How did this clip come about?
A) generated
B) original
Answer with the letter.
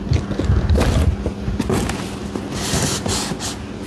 B